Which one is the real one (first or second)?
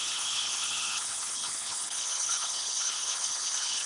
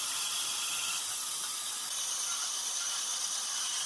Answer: second